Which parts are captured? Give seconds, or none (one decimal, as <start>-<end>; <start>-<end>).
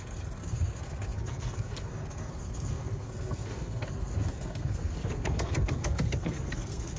none